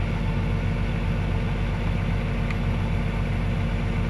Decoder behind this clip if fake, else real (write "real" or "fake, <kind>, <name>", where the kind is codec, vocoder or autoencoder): real